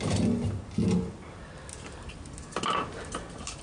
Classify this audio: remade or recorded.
recorded